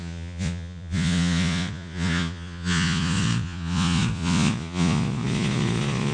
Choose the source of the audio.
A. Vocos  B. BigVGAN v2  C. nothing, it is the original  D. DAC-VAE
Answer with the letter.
A